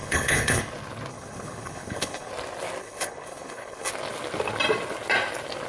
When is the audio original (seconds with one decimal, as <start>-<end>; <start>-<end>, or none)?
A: 0.6-1.1; 2.3-2.8; 3.9-5.7